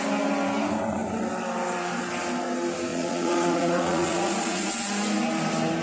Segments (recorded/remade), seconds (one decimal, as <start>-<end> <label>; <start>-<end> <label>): 0.0-2.9 recorded; 2.9-4.7 remade; 4.7-5.8 recorded